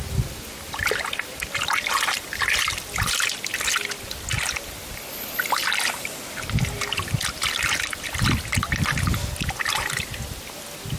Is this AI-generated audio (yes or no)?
no